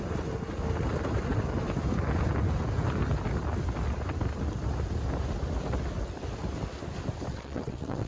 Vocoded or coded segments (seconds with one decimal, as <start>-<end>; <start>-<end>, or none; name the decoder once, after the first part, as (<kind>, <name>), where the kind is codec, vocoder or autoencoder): 7.3-8.1 (vocoder, WaveNeXt)